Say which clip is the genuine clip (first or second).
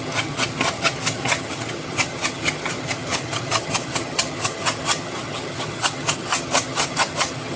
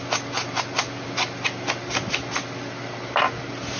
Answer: second